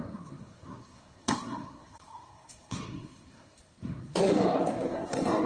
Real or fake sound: fake